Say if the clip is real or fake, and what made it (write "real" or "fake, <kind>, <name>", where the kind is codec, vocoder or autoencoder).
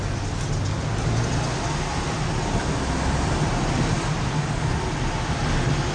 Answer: real